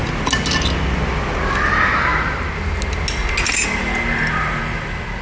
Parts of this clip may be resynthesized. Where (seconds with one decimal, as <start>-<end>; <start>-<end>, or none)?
none

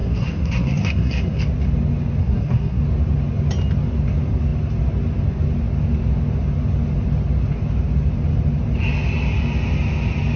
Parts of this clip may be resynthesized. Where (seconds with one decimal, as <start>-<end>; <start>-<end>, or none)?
0.0-1.4; 2.2-2.8

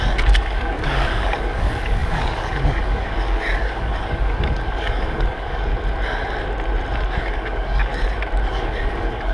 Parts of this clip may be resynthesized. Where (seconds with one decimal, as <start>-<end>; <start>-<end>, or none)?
0.0-5.7; 7.2-7.9; 8.5-9.3

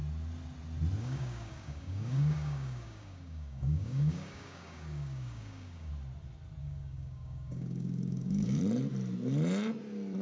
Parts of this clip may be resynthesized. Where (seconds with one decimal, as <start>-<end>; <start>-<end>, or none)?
1.0-5.9; 6.6-8.6

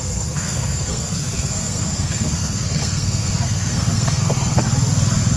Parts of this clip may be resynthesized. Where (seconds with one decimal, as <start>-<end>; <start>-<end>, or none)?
0.0-4.7

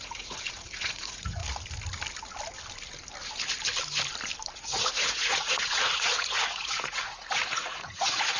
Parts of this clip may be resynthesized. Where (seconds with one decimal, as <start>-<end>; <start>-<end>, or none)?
0.0-1.4; 4.5-8.4

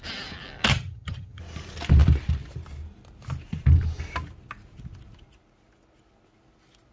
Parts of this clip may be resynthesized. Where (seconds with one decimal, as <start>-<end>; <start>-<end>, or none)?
0.7-1.4

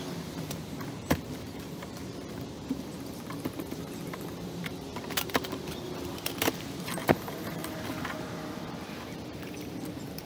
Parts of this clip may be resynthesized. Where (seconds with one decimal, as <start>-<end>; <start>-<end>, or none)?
0.0-10.3